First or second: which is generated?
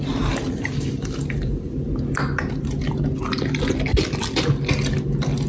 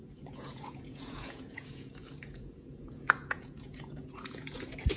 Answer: second